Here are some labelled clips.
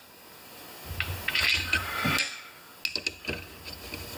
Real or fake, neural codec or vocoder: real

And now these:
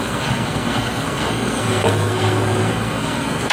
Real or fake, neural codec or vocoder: fake, codec, SNAC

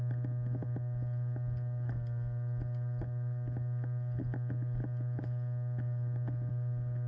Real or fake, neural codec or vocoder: real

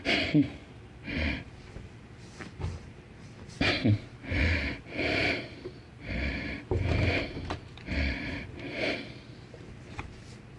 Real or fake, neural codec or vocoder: fake, vocoder, BigVGAN v2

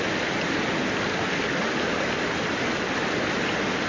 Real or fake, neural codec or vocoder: real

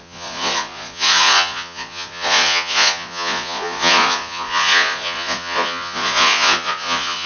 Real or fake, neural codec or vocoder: fake, vocoder, Vocos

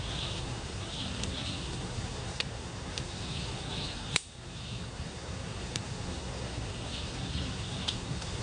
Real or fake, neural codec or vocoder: fake, codec, SNAC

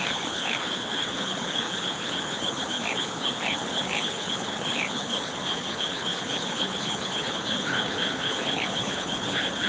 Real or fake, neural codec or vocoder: fake, codec, HILCodec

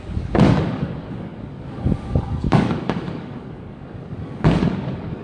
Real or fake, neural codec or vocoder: fake, codec, DAC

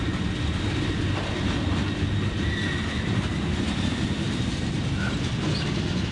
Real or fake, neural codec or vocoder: real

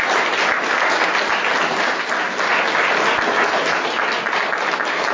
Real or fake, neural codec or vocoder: real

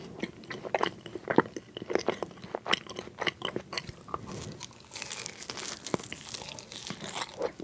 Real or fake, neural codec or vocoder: real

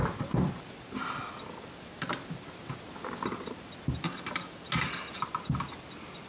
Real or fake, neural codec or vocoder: real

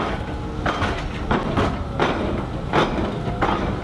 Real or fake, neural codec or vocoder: real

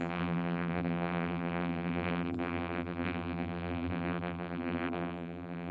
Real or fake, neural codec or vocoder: fake, vocoder, BigVGAN v2